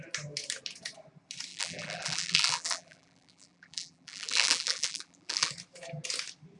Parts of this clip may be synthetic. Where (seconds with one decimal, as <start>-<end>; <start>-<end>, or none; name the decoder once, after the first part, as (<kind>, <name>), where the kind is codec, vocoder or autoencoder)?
1.5-5.5 (vocoder, BigVGAN v2)